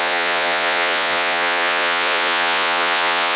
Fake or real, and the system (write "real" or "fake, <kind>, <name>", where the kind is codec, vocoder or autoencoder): fake, vocoder, Vocos